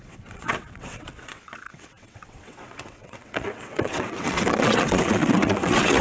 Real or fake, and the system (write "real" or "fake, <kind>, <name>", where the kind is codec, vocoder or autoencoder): fake, vocoder, WaveNeXt